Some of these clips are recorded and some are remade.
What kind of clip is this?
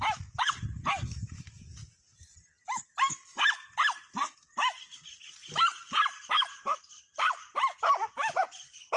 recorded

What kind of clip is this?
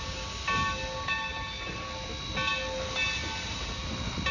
recorded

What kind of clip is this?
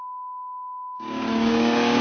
remade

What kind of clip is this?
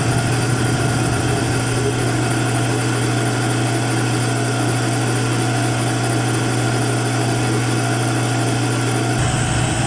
recorded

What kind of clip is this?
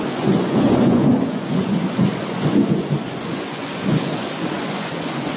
remade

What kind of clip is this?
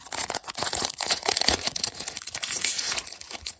remade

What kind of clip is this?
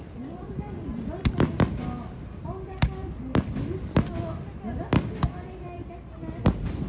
recorded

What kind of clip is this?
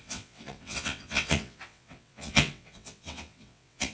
remade